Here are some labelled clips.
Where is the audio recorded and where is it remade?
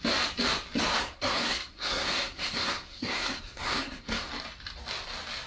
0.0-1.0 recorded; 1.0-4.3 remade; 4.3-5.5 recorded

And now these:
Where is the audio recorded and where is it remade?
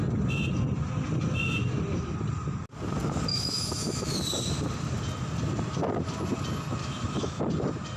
0.0-3.3 recorded; 3.3-4.1 remade; 4.1-6.8 recorded; 6.8-7.4 remade; 7.4-8.0 recorded